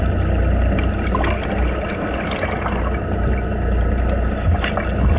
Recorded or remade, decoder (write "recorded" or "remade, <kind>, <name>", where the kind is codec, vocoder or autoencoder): recorded